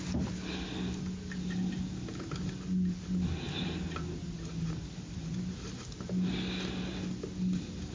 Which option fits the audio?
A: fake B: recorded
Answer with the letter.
B